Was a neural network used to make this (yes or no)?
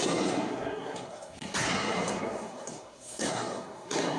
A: yes